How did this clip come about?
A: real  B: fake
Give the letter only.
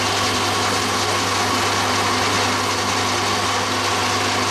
A